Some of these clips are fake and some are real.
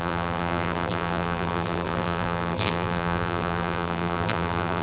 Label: fake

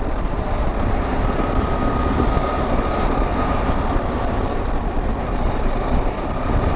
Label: fake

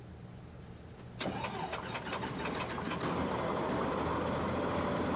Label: real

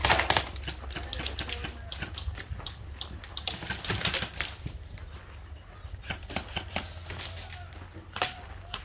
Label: real